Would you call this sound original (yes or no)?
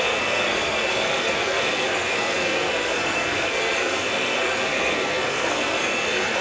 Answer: no